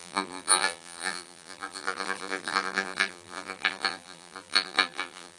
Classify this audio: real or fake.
fake